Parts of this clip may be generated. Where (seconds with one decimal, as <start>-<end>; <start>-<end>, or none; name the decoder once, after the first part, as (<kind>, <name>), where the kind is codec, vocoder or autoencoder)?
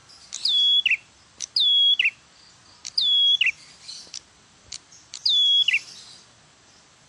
none